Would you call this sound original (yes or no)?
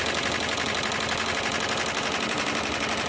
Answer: yes